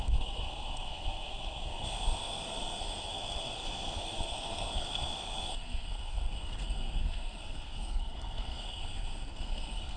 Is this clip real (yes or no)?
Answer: no